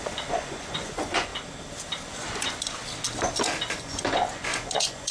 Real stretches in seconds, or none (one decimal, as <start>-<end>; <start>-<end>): 1.3-2.1; 2.8-3.8